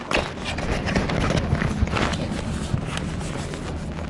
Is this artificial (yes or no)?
no